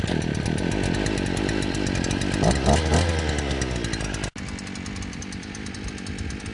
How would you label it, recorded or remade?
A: recorded